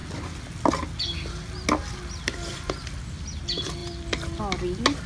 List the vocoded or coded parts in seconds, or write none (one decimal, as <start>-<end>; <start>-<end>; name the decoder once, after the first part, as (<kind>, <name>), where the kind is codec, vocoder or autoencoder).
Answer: none